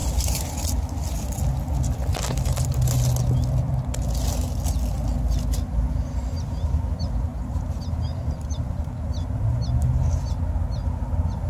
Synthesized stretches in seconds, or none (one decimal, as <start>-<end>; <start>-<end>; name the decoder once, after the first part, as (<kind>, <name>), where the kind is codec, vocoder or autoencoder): 0.0-0.5 (vocoder, BigVGAN v2); 7.3-9.6